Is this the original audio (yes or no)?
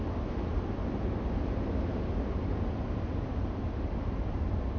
yes